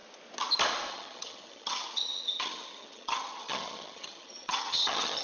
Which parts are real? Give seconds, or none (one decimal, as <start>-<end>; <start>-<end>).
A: 0.0-0.9